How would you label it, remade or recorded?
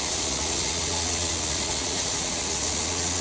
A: remade